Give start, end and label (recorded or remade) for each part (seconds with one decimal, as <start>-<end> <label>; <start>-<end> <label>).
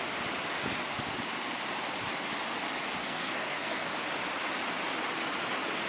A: 0.0-3.0 recorded; 3.0-3.9 remade; 3.9-5.9 recorded